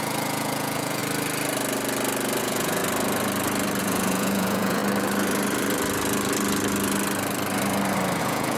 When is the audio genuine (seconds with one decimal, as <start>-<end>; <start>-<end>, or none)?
1.0-2.4; 2.8-3.8; 4.8-8.2